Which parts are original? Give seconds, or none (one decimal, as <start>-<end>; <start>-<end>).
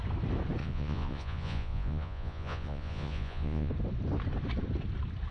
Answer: 0.0-0.6; 3.7-5.3